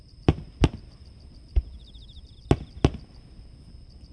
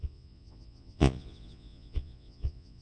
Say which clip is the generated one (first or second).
second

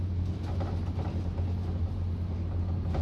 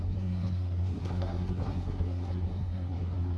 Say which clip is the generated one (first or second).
second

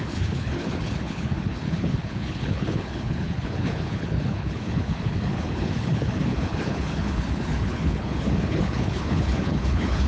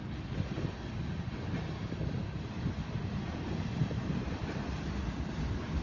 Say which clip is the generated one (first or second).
first